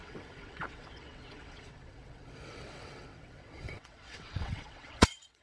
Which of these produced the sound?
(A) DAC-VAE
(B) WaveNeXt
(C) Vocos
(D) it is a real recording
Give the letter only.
B